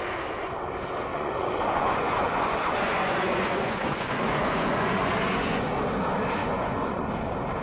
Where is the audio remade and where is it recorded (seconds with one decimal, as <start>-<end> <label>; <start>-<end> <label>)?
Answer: 0.0-1.1 recorded; 1.1-5.7 remade; 5.7-6.4 recorded; 6.4-7.1 remade; 7.1-7.6 recorded